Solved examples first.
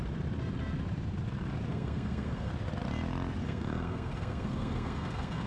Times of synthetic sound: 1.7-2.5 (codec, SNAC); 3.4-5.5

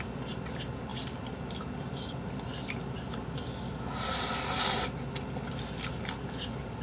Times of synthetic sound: none

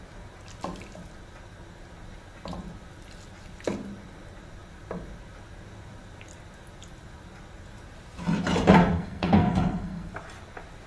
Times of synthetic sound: 8.8-10.1 (codec, SNAC)

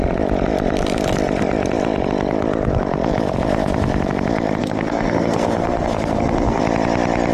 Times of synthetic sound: 4.6-6.6 (codec, SNAC)